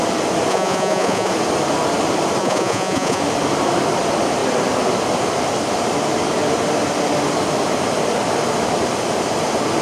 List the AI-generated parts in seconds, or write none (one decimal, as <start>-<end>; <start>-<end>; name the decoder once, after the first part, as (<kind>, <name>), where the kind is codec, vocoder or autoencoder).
0.5-1.3 (vocoder, Vocos); 2.4-3.2